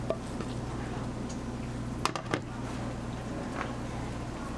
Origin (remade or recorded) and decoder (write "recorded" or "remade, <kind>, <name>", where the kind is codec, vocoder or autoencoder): recorded